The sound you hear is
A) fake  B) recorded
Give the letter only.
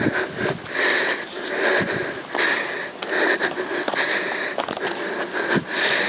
B